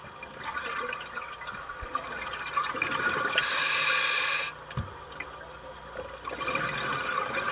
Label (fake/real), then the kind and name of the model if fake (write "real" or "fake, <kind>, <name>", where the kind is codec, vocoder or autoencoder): real